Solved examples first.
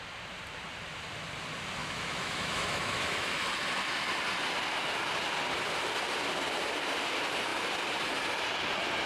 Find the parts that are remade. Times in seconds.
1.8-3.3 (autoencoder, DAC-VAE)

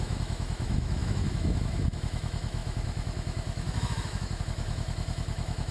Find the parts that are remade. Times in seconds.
0.0-5.7 (autoencoder, DAC-VAE)

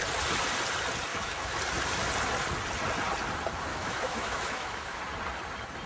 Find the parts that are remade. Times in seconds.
1.1-1.6 (autoencoder, DAC-VAE); 3.7-5.0

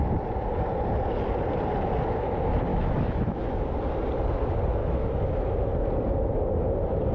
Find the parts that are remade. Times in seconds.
2.7-3.4 (autoencoder, DAC-VAE); 4.8-5.7

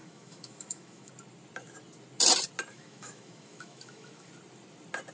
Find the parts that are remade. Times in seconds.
0.0-1.1 (autoencoder, DAC-VAE); 2.7-4.3